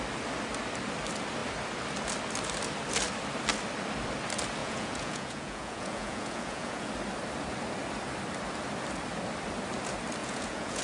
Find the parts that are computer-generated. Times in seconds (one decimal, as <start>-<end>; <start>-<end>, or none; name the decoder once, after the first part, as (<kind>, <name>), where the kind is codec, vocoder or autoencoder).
4.6-6.9 (vocoder, Vocos); 10.2-10.8